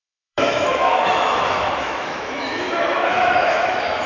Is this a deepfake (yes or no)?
yes